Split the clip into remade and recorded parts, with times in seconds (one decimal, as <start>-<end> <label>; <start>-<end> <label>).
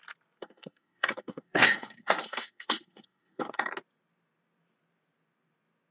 0.0-0.4 recorded; 0.4-3.7 remade; 3.7-5.9 recorded